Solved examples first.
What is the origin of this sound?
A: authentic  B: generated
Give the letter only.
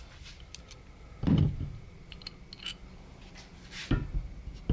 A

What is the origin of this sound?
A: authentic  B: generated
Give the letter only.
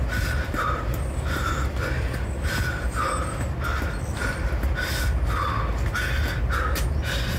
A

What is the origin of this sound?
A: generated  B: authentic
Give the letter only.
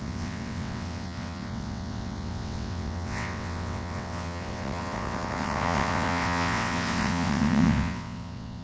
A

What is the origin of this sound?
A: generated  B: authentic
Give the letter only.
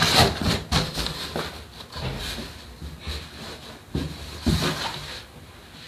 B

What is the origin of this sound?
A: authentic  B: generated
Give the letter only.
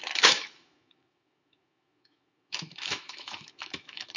B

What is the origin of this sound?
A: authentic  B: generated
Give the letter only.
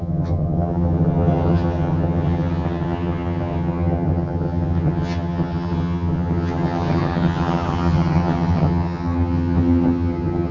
B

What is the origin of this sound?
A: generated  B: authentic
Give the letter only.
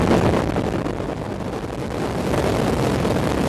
B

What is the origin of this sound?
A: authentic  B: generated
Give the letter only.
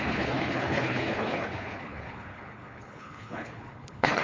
B